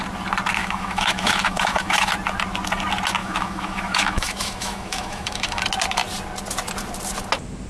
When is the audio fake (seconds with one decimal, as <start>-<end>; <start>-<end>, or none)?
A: 0.6-2.1; 3.2-5.6